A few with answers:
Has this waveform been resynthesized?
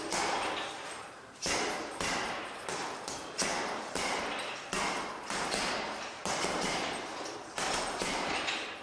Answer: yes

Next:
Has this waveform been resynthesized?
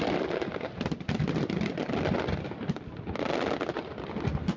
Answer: no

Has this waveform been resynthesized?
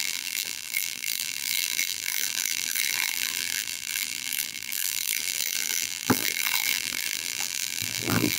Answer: yes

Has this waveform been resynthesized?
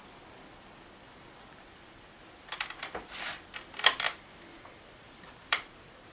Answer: yes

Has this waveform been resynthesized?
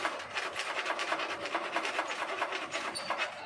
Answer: yes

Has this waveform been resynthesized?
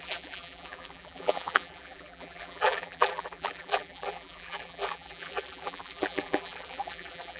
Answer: yes